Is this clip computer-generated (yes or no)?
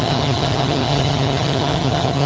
yes